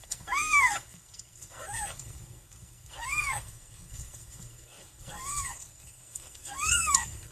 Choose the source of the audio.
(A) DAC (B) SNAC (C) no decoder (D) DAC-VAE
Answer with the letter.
B